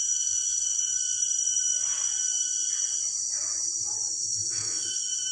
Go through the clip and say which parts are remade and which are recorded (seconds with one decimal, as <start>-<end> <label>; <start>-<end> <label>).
0.0-1.0 remade; 1.0-4.2 recorded; 4.2-5.3 remade